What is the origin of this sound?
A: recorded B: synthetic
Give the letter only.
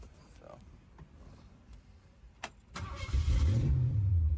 B